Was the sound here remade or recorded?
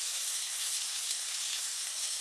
remade